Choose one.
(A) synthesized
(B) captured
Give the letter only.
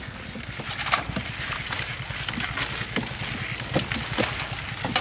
B